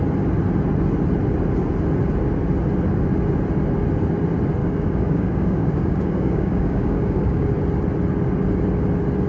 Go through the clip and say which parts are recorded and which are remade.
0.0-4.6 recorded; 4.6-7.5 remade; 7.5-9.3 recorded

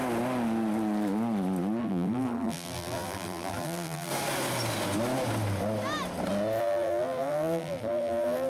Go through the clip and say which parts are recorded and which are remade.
0.0-1.8 recorded; 1.8-4.1 remade; 4.1-6.6 recorded; 6.6-8.5 remade